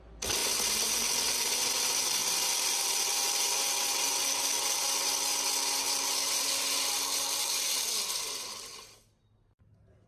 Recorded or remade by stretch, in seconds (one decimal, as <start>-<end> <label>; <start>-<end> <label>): 0.0-2.2 recorded; 2.2-2.8 remade; 2.8-10.1 recorded